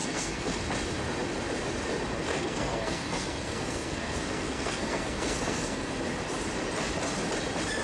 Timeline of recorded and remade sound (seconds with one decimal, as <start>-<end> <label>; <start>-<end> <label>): 0.0-0.6 remade; 0.6-2.3 recorded; 2.3-5.9 remade; 5.9-7.8 recorded